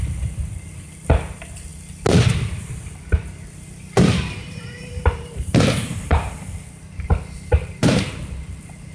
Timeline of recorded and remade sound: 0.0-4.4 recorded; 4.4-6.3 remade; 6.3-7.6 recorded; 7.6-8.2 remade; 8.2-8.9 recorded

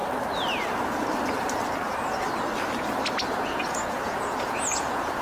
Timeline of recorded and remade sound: 0.0-3.1 recorded; 3.1-5.2 remade